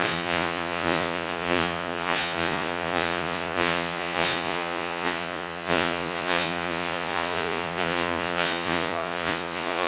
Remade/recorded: remade